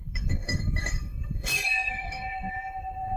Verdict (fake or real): fake